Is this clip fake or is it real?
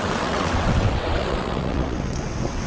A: fake